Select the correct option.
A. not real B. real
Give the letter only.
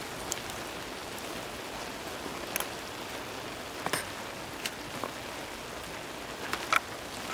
B